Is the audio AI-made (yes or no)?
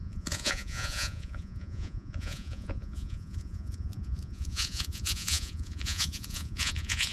yes